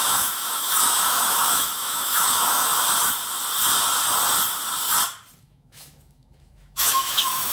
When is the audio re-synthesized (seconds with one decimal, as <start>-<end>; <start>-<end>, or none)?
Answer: 0.0-2.7; 5.4-7.5